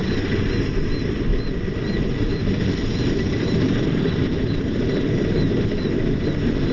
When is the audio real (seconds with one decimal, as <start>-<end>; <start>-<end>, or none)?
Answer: 0.0-1.3; 5.3-6.7